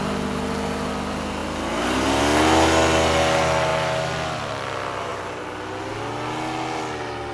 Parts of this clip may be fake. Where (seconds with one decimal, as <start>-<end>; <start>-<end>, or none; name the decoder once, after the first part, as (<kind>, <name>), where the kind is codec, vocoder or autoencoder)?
none

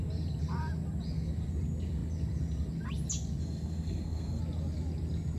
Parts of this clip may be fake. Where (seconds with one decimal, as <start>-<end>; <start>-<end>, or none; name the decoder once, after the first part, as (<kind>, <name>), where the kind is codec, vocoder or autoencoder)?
3.4-4.4 (codec, SNAC)